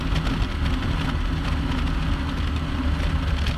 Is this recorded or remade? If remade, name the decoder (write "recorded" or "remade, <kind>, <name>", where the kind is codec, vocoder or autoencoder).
recorded